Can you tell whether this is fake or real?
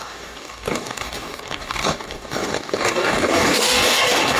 fake